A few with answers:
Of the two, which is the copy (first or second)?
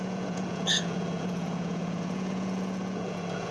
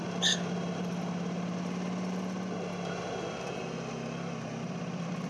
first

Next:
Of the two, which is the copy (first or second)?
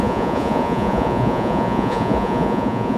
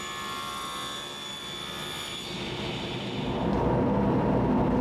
first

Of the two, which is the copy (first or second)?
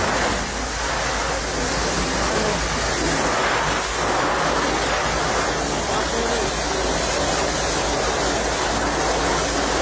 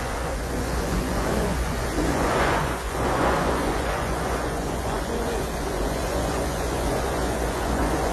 second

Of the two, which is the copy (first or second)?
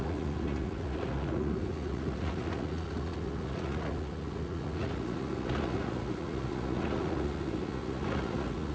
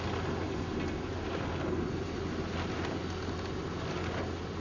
first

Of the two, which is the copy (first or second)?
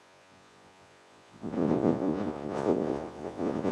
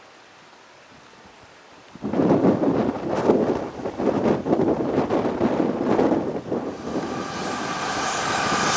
first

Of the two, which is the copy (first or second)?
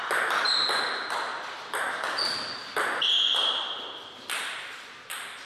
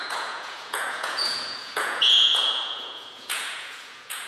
second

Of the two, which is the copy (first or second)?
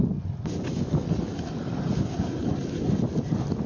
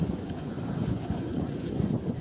second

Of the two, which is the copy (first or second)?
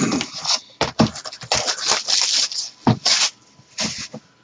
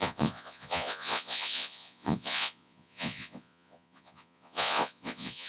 second